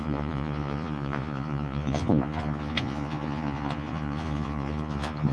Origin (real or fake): fake